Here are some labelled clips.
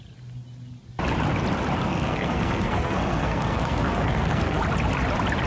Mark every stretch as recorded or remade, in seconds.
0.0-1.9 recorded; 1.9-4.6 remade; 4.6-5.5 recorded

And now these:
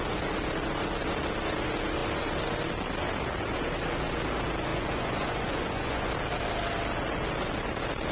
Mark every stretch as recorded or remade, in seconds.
0.0-4.7 recorded; 4.7-6.1 remade; 6.1-8.1 recorded

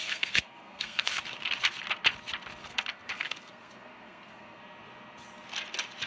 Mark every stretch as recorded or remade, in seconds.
0.0-1.2 remade; 1.2-2.6 recorded; 2.6-4.6 remade; 4.6-6.1 recorded

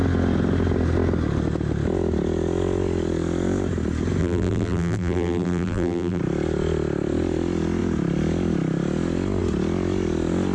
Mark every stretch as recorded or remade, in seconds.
0.0-4.2 recorded; 4.2-6.2 remade; 6.2-10.5 recorded

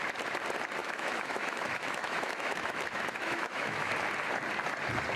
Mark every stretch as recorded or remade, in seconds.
0.0-0.8 recorded; 0.8-3.9 remade; 3.9-5.2 recorded

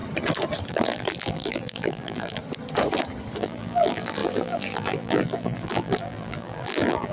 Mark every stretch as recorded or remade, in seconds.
0.0-0.7 recorded; 0.7-2.4 remade; 2.4-3.4 recorded; 3.4-7.1 remade